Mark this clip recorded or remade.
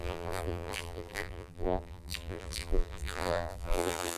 remade